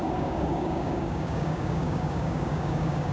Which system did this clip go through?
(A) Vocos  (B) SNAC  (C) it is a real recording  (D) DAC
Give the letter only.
D